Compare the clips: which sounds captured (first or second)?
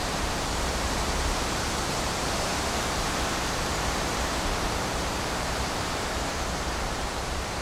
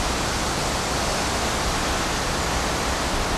second